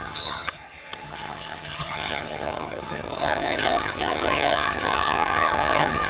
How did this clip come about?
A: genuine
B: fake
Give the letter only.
B